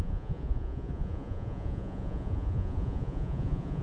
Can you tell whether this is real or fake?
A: fake